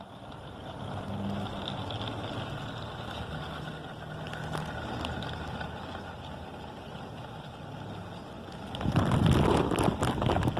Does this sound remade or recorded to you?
recorded